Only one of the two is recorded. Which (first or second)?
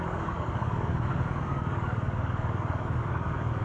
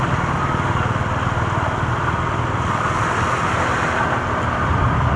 second